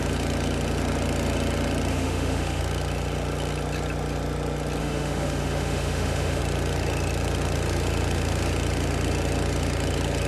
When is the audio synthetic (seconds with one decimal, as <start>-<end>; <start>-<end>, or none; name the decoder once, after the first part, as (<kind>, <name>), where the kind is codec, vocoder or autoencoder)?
1.9-2.6 (autoencoder, DAC-VAE); 4.8-6.4